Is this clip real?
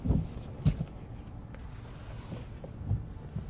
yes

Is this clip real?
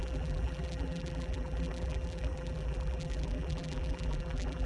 no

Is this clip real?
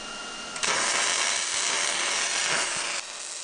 yes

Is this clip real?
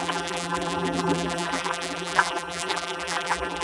no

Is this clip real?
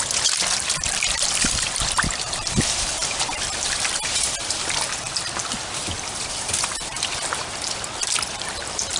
no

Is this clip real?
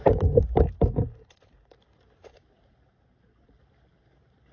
no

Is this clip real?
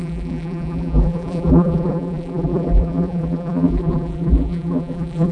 no